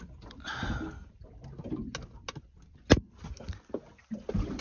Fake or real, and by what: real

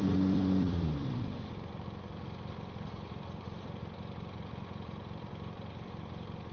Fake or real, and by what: fake, vocoder, BigVGAN v2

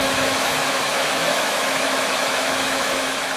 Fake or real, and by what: fake, autoencoder, DAC-VAE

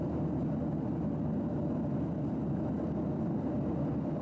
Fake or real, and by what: real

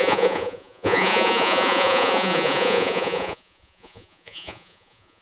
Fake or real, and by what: fake, vocoder, Vocos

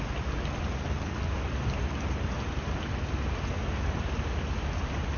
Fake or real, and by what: real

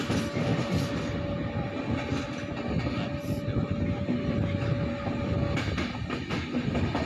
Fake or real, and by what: real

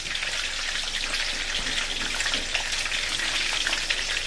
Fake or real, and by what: real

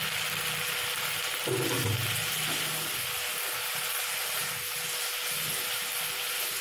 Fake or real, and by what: real